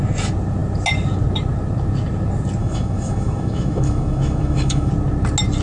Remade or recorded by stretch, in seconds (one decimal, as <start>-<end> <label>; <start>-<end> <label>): 0.0-2.6 recorded; 2.6-4.9 remade; 4.9-5.6 recorded